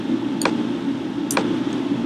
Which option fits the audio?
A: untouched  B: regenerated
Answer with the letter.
A